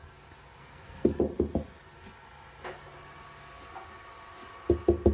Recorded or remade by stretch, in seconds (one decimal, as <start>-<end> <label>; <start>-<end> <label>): 0.0-0.6 recorded; 0.6-1.2 remade; 1.2-5.1 recorded